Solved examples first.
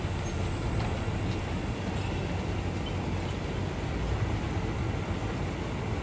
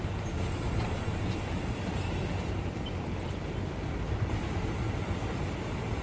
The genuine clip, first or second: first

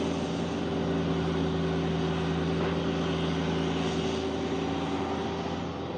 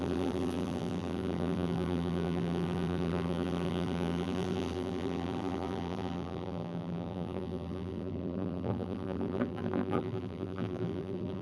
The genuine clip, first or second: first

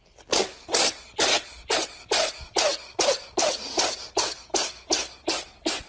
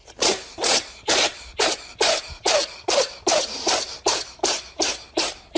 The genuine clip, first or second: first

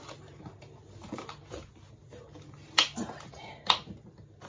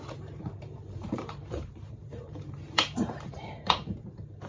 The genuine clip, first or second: first